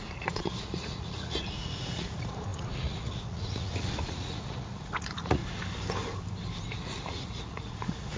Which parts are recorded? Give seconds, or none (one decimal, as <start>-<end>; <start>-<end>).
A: 5.4-6.8